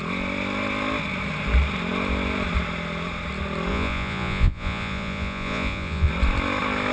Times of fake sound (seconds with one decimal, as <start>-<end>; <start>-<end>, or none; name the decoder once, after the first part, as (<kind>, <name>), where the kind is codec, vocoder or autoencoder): 3.7-6.1 (vocoder, Vocos)